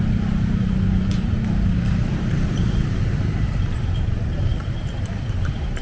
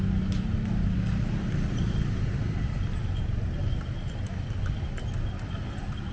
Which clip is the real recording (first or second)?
second